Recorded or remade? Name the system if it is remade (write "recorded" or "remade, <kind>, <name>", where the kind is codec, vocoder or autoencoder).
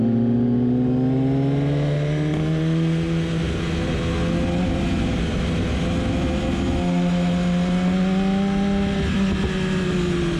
recorded